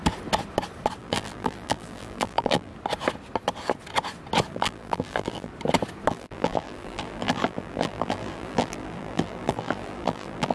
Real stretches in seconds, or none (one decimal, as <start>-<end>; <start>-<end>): 0.0-1.0; 2.7-4.5; 5.5-6.1